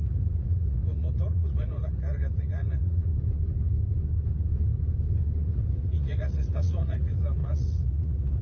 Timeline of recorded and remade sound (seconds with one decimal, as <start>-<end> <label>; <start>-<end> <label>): 0.0-3.1 remade; 3.1-5.4 recorded; 5.4-8.4 remade